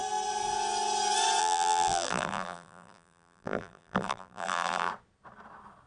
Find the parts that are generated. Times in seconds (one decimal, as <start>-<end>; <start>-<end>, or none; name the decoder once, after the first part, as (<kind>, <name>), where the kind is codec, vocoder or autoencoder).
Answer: 1.4-4.9 (vocoder, BigVGAN v2)